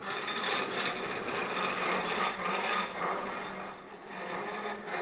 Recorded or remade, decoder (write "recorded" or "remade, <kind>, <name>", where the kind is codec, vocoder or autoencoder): recorded